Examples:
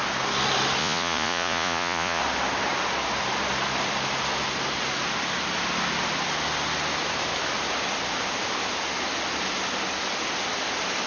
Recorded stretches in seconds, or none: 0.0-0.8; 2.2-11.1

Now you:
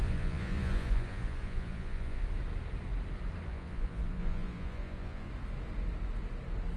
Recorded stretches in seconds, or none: 2.2-3.5; 5.3-6.8

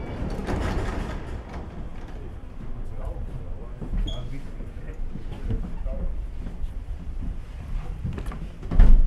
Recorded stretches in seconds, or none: 0.0-1.9; 3.7-6.6; 7.3-9.1

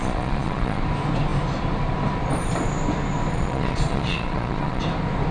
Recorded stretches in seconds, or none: 0.8-3.3; 4.8-5.3

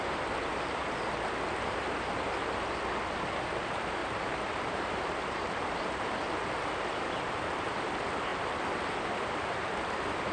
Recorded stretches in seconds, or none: 0.0-4.0; 6.4-10.3

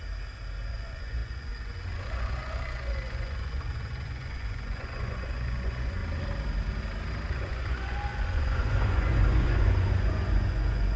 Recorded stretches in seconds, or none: 0.0-0.7; 6.0-7.3

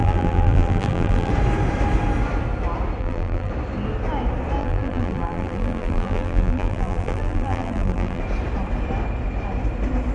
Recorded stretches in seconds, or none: 1.3-3.0; 3.5-4.6; 8.2-10.1

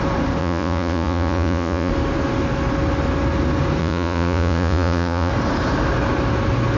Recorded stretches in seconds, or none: 0.0-0.4; 1.9-3.8; 5.3-6.8